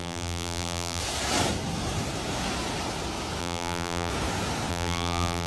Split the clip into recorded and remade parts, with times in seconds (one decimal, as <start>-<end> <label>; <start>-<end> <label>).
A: 0.0-1.0 remade; 1.0-3.4 recorded; 3.4-4.1 remade; 4.1-4.7 recorded; 4.7-5.5 remade